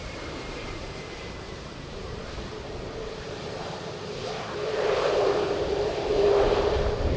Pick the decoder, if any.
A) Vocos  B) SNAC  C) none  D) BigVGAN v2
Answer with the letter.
D